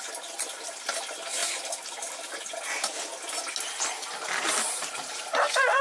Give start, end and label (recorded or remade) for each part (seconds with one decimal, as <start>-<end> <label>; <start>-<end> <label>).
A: 0.0-5.8 recorded